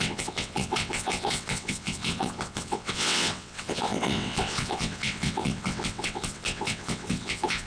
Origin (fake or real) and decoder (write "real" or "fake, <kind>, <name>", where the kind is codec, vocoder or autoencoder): fake, vocoder, WaveNeXt